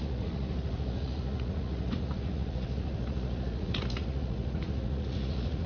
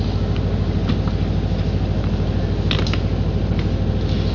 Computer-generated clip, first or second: first